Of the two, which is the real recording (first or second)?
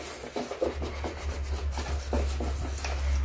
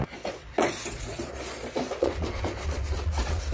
first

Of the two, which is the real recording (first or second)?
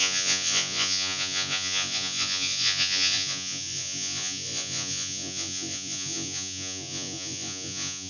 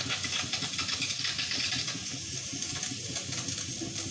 second